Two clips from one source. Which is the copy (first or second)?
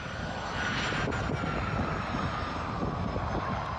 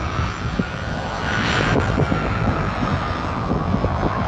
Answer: second